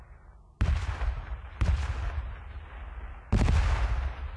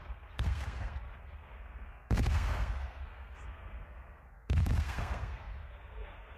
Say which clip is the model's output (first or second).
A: second